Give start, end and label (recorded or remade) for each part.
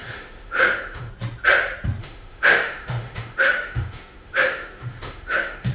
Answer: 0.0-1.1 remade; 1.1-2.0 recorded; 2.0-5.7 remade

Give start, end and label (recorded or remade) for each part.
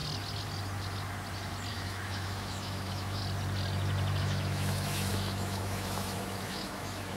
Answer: 0.0-1.7 recorded; 1.7-3.2 remade; 3.2-4.2 recorded; 4.2-7.2 remade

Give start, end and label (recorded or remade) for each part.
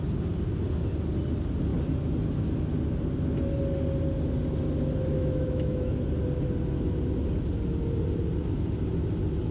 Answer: 0.0-5.1 recorded; 5.1-5.9 remade; 5.9-9.5 recorded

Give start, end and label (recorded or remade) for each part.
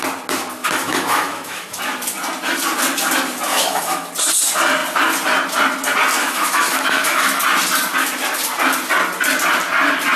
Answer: 0.0-0.6 recorded; 0.6-1.8 remade; 1.8-3.5 recorded; 3.5-4.1 remade; 4.1-6.2 recorded; 6.2-7.4 remade; 7.4-10.2 recorded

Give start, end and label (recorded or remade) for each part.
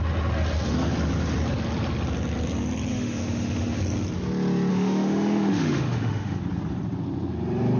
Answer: 0.0-2.9 recorded; 2.9-3.8 remade; 3.8-4.7 recorded; 4.7-6.4 remade; 6.4-7.8 recorded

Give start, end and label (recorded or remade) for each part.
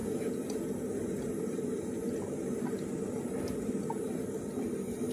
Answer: 0.0-5.1 recorded